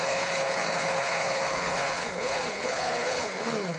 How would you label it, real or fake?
fake